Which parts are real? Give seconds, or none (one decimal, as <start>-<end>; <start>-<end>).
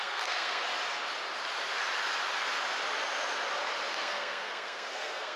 0.7-3.9